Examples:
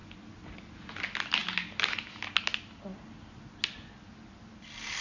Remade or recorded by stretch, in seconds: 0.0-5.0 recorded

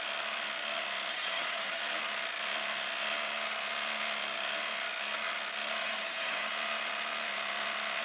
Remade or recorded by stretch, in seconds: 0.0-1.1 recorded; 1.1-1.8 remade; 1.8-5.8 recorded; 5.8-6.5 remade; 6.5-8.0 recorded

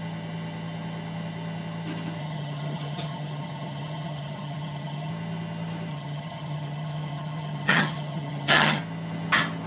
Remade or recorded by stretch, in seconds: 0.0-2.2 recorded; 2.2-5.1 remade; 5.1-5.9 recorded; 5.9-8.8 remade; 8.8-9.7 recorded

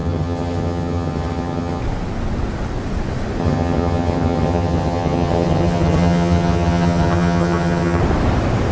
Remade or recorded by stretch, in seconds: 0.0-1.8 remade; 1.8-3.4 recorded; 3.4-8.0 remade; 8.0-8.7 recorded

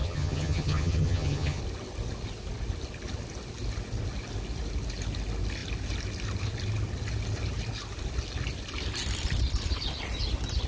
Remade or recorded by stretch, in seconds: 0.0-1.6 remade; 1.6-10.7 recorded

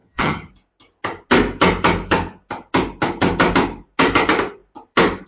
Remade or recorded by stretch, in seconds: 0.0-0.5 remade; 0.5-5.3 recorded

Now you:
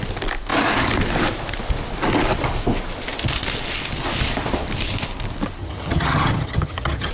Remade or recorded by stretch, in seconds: 0.0-5.6 recorded; 5.6-7.1 remade

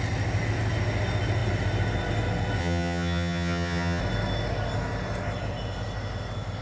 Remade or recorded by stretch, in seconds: 0.0-2.6 recorded; 2.6-4.0 remade; 4.0-6.6 recorded